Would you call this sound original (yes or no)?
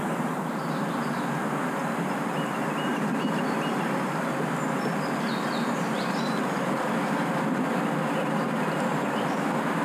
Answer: yes